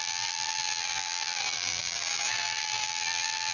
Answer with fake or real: fake